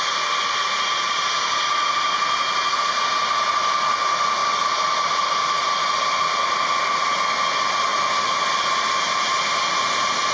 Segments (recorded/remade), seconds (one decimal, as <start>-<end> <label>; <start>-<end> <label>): 0.0-10.3 recorded